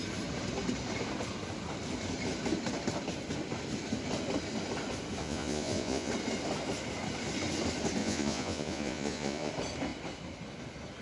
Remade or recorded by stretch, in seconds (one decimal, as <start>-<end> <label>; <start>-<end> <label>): 0.0-5.2 recorded; 5.2-6.1 remade; 6.1-8.0 recorded; 8.0-9.5 remade; 9.5-11.0 recorded